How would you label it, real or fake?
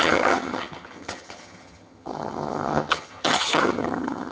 fake